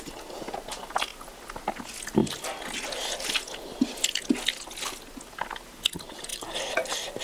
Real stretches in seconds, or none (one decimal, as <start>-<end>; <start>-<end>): 0.0-6.3